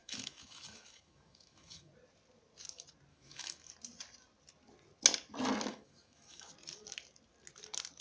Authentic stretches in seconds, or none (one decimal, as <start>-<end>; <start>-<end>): 1.9-3.1; 3.7-5.7; 6.5-8.0